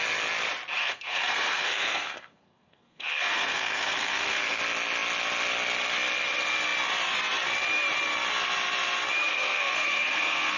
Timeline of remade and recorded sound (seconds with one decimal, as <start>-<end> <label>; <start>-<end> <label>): 0.0-0.8 recorded; 0.8-4.6 remade; 4.6-9.3 recorded; 9.3-10.6 remade